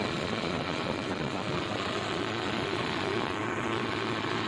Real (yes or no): no